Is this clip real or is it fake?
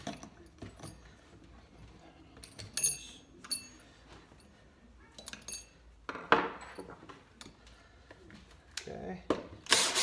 real